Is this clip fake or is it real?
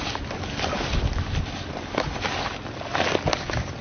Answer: real